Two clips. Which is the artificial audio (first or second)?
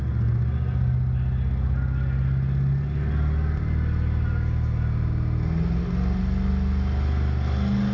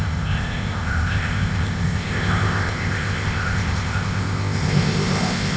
second